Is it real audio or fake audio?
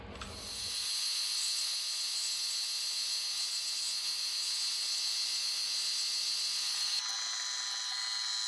real